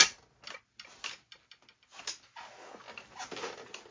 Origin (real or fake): real